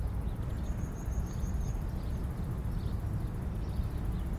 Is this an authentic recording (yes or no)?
yes